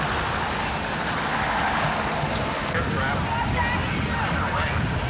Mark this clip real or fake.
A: real